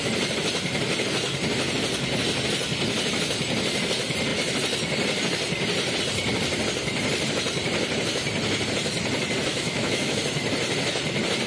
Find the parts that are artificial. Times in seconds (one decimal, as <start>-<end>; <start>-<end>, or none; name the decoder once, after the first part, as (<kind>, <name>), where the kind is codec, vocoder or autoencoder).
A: 9.5-10.2 (autoencoder, DAC-VAE)